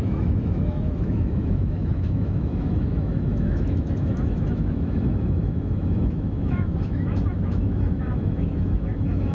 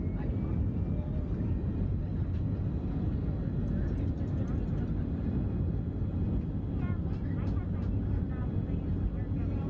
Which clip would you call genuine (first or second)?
second